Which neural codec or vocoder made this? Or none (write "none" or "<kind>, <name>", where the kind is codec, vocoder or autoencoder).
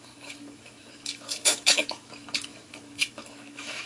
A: autoencoder, DAC-VAE